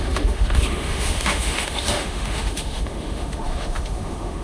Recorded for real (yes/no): no